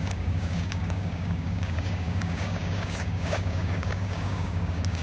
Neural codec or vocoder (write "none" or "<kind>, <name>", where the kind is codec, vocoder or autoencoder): codec, DAC